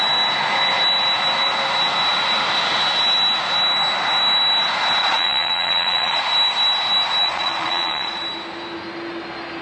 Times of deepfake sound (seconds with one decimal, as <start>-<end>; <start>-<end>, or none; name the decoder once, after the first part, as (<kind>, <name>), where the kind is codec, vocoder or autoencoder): 5.0-6.2 (vocoder, Vocos); 7.2-8.2